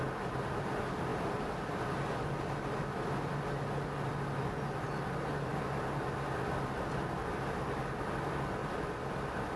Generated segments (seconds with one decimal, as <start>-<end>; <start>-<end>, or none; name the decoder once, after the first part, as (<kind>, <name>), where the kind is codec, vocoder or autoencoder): 1.1-2.8 (vocoder, BigVGAN v2)